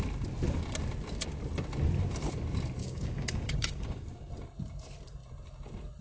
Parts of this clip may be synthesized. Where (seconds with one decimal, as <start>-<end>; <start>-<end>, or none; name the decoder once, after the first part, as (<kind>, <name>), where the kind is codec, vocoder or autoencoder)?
2.8-4.3 (codec, DAC)